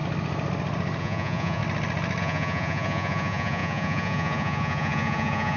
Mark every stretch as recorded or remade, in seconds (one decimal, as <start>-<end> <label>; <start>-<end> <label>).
0.0-1.0 recorded; 1.0-1.6 remade; 1.6-2.2 recorded; 2.2-5.6 remade